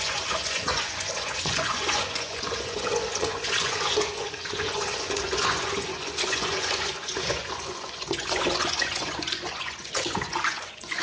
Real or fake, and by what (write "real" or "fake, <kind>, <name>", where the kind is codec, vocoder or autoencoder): fake, vocoder, Vocos